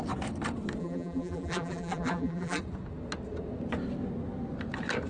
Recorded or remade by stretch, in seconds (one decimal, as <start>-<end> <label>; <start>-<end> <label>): 0.0-0.8 recorded; 0.8-2.6 remade; 2.6-5.1 recorded